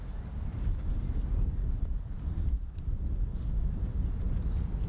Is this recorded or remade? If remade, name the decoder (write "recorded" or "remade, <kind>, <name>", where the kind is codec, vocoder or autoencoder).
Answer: recorded